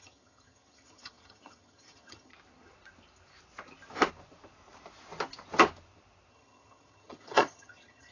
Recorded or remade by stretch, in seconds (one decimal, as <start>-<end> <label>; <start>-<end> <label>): 0.0-2.3 remade; 2.3-6.3 recorded; 6.3-8.1 remade